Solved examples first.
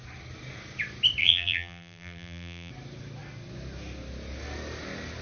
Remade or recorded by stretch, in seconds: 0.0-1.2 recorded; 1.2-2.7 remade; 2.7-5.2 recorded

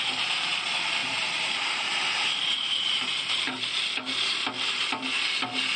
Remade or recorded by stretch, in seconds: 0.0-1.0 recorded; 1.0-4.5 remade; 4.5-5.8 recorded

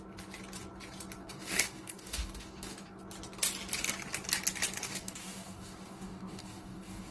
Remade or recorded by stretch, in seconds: 0.0-1.2 recorded; 1.2-3.0 remade; 3.0-4.8 recorded; 4.8-7.1 remade

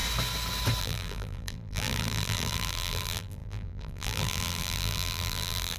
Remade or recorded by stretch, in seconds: 0.0-0.8 recorded; 0.8-5.8 remade

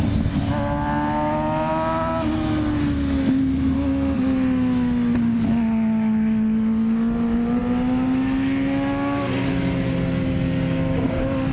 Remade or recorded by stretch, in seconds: 0.0-11.5 recorded

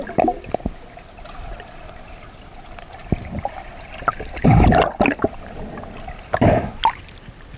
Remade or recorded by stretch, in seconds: 0.0-7.6 recorded

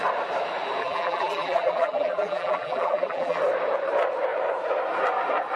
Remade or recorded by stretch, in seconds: 0.0-0.8 recorded; 0.8-3.4 remade; 3.4-5.6 recorded

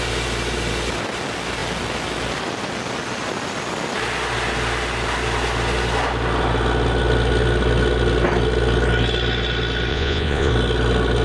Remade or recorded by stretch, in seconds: 0.0-9.9 recorded; 9.9-10.5 remade; 10.5-11.2 recorded